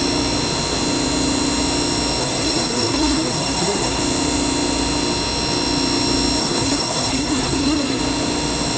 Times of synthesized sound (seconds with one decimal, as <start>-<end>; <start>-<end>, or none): 2.2-4.0; 6.4-8.0